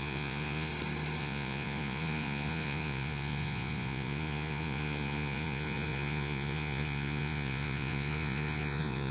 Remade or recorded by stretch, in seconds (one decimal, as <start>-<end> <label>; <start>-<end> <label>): 0.0-0.7 remade; 0.7-1.2 recorded; 1.2-9.1 remade